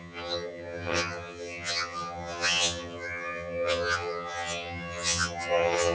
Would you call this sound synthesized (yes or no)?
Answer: yes